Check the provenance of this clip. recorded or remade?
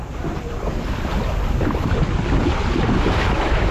remade